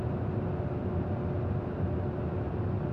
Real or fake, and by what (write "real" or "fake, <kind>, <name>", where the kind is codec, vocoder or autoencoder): real